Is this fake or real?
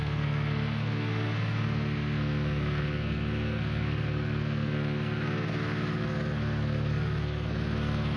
fake